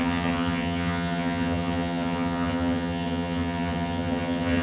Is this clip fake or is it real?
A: fake